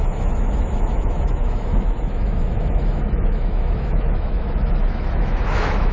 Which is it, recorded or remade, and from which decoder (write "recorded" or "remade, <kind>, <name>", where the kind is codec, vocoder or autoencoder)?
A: remade, autoencoder, DAC-VAE